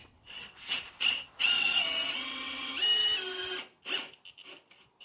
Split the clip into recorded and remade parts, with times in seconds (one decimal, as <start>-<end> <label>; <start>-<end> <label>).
0.0-2.7 remade; 2.7-5.0 recorded